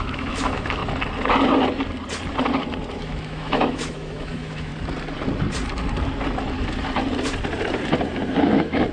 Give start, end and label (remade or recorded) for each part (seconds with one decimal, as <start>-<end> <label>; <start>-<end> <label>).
0.0-0.8 remade; 0.8-2.9 recorded; 2.9-4.7 remade; 4.7-8.4 recorded; 8.4-8.9 remade